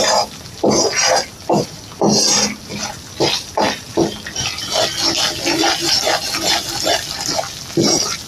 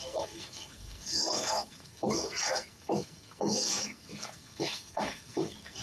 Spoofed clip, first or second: second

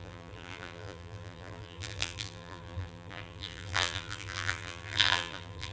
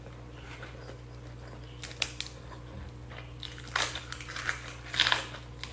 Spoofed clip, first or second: first